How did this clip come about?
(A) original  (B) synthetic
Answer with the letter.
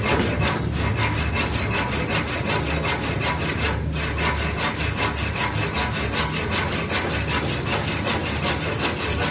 A